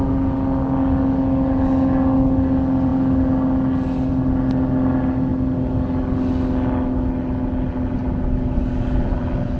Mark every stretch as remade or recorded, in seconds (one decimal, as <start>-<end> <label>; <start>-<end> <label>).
0.0-9.6 recorded